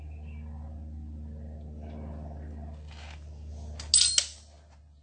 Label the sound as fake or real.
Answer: real